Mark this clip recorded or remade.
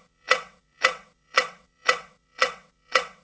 remade